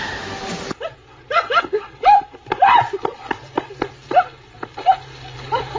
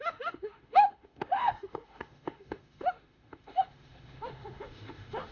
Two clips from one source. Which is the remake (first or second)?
second